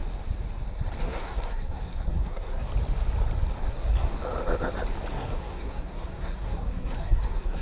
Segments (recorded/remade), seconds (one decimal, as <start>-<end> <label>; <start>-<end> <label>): 0.0-1.0 recorded; 1.0-2.7 remade; 2.7-3.7 recorded; 3.7-4.2 remade; 4.2-5.1 recorded; 5.1-7.6 remade